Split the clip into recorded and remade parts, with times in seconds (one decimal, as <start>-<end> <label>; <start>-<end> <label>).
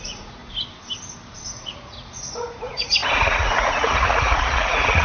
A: 0.0-0.4 remade; 0.4-1.3 recorded; 1.3-5.0 remade